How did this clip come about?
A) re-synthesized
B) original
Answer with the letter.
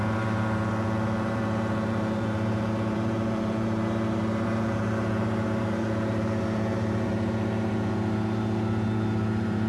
A